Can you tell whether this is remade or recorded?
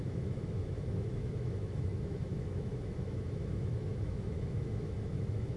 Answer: remade